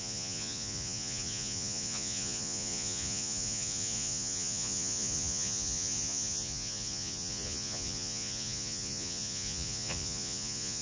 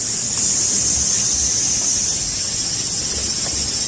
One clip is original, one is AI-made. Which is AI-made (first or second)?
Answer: first